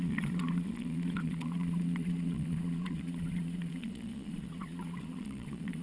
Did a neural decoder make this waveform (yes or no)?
yes